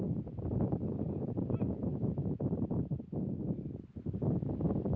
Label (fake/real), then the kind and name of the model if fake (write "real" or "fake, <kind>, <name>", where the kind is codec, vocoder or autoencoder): real